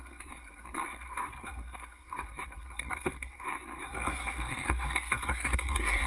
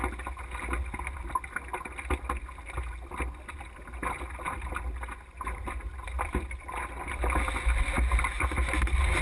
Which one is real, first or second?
second